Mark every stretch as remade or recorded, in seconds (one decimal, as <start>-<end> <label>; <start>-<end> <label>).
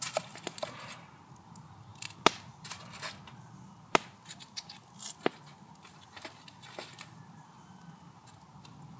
0.0-9.0 recorded